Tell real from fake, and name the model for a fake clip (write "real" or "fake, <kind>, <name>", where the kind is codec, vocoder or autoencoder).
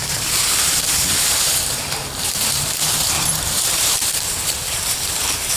fake, vocoder, BigVGAN v2